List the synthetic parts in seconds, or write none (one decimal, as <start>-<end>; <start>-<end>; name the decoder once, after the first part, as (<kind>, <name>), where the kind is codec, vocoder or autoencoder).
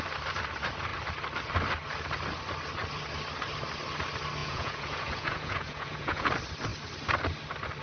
4.4-6.3 (vocoder, Vocos)